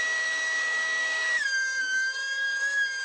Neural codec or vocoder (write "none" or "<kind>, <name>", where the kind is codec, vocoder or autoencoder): codec, DAC